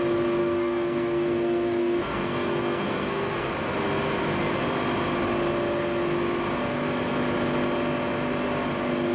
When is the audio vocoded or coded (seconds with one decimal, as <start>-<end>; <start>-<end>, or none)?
0.4-3.5

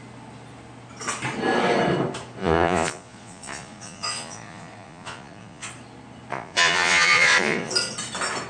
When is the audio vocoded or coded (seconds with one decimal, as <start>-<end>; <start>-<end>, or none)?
2.4-5.7; 6.3-7.7

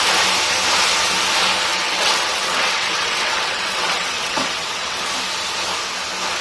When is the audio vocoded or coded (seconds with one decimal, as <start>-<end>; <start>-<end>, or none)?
1.7-5.0

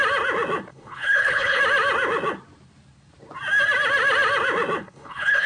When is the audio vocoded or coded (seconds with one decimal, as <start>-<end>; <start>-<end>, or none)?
0.7-1.6; 4.8-5.5

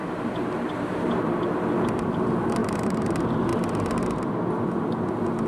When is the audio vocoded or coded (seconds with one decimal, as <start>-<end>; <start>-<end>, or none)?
0.0-1.2; 2.6-3.1